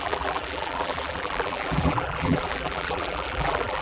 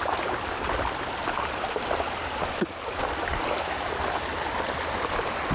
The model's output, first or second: first